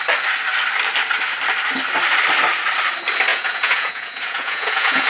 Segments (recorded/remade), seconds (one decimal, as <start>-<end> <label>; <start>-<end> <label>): 0.0-3.3 recorded; 3.3-5.1 remade